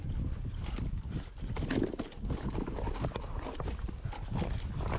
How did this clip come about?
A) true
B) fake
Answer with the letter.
A